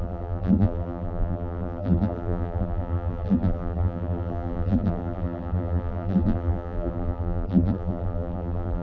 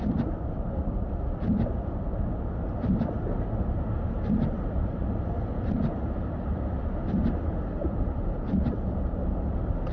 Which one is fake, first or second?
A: first